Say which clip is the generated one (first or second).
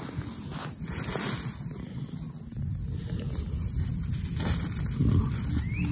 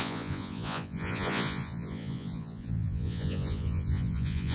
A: second